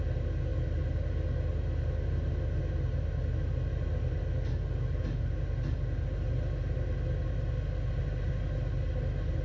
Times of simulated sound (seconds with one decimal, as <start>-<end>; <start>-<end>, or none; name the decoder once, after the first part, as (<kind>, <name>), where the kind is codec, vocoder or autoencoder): none